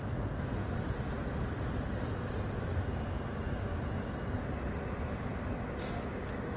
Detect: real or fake real